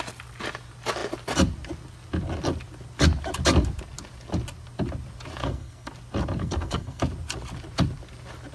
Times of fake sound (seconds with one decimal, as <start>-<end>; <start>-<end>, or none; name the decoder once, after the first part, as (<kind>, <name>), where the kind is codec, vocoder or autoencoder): 5.4-5.9 (codec, SNAC); 6.4-7.0